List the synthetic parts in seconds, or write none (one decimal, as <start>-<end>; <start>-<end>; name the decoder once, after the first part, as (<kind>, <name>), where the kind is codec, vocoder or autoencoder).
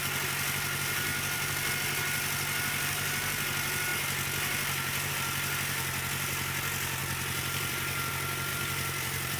1.1-1.7 (vocoder, BigVGAN v2); 7.0-8.1; 8.5-9.4